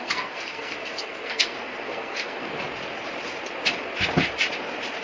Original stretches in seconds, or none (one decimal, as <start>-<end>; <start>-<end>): 2.5-5.0